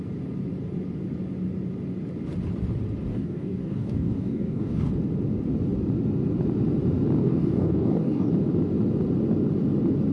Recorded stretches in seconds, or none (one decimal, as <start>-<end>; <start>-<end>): 0.0-3.1; 4.9-7.2; 8.3-10.1